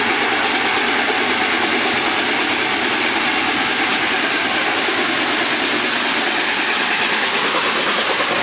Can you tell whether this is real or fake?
real